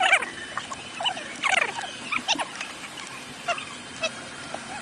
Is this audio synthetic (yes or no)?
no